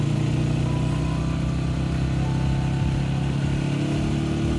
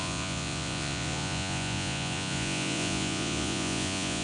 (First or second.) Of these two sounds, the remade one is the second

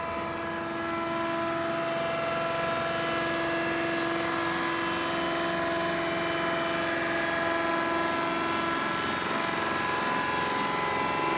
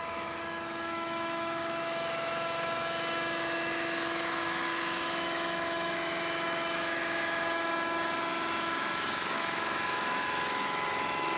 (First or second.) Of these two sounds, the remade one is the second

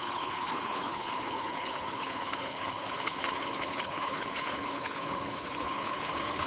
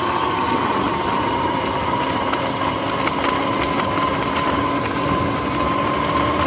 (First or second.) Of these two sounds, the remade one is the first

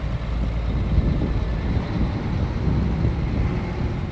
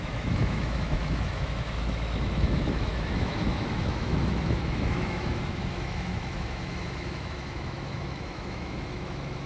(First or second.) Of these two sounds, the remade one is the second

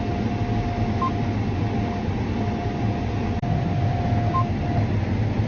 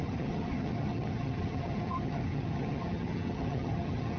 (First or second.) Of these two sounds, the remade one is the second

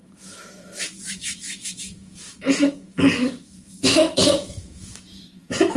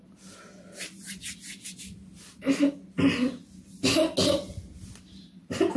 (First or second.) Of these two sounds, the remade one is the first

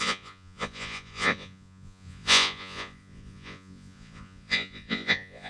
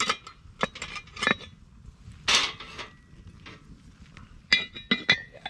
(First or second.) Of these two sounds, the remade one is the first